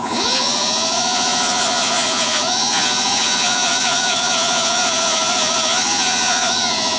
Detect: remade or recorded remade